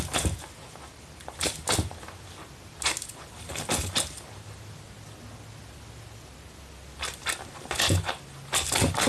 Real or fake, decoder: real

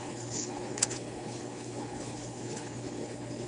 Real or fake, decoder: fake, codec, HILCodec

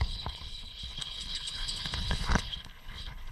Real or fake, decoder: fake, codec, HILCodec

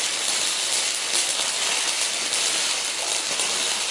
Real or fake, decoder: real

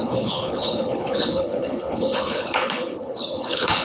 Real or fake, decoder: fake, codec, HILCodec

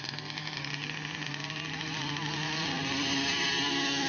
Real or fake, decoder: real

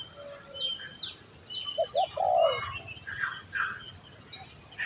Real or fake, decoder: real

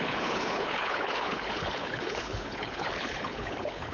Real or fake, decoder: fake, codec, HILCodec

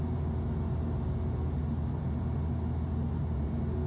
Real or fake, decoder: real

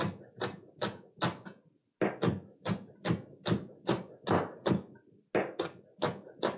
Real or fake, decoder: real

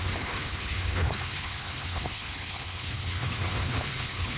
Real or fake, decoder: fake, codec, HILCodec